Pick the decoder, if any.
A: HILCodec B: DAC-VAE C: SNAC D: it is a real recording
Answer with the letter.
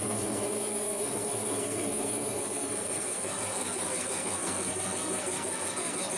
C